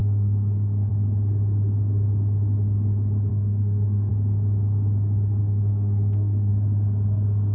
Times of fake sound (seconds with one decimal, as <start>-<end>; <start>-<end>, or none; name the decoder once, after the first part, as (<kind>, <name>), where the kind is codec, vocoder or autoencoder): 0.0-0.9 (codec, SNAC); 3.3-4.1; 5.4-6.5